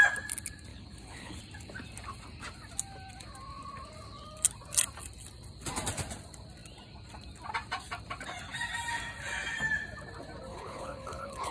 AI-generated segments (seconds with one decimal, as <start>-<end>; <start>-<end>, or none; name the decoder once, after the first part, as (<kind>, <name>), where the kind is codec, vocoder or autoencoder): 0.7-1.4 (codec, HILCodec); 10.5-11.5